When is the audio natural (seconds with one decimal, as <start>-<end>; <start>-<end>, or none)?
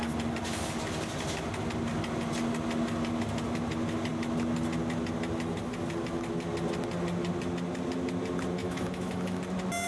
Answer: 0.0-8.6; 9.4-9.9